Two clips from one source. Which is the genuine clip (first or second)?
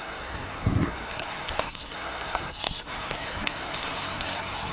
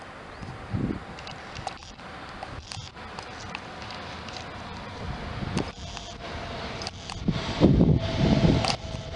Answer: second